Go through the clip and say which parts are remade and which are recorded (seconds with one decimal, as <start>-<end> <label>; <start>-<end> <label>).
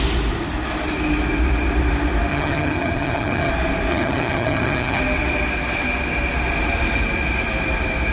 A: 0.0-2.3 recorded; 2.3-3.5 remade; 3.5-3.9 recorded; 3.9-5.0 remade; 5.0-8.1 recorded